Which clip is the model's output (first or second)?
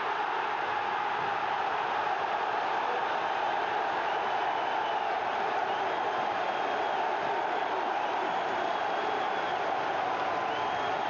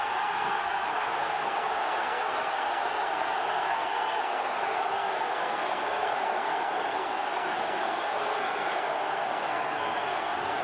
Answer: second